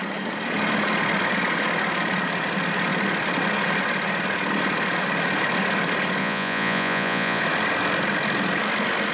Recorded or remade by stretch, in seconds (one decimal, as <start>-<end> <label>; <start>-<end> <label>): 0.0-6.2 recorded; 6.2-7.4 remade; 7.4-9.1 recorded